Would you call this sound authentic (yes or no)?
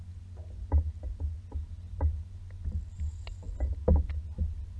yes